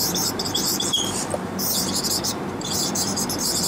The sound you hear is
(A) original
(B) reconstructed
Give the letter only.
B